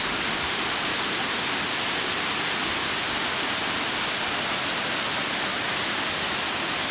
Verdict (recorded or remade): recorded